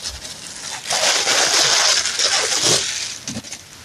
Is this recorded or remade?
recorded